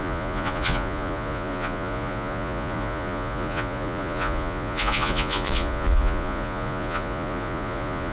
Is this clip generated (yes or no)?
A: yes